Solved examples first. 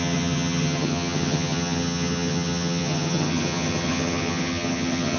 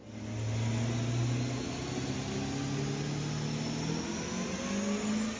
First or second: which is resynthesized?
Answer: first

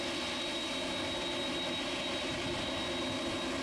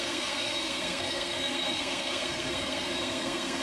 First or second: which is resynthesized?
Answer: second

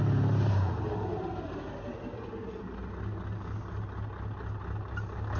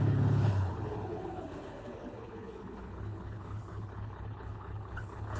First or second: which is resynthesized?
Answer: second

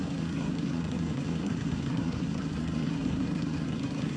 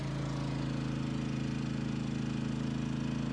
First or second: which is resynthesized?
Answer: first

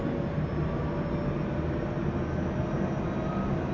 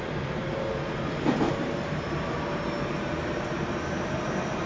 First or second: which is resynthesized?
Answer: second